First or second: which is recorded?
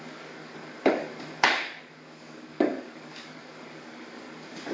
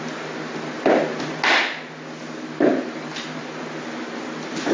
second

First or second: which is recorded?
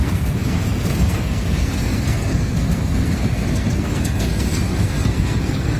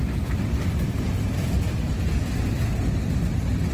second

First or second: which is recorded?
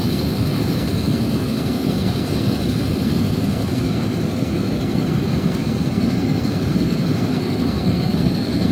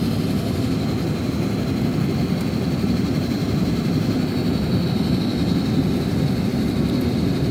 second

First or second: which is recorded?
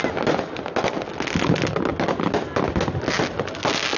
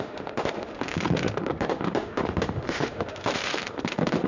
first